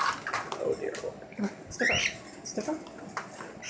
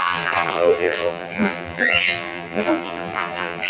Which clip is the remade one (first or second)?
second